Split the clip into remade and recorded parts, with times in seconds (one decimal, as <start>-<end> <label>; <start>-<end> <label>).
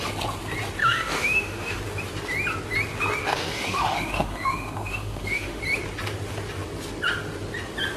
0.0-0.8 recorded; 0.8-1.8 remade; 1.8-3.2 recorded; 3.2-5.6 remade; 5.6-8.0 recorded